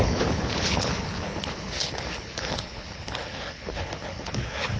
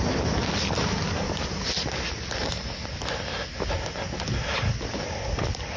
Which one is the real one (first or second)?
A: second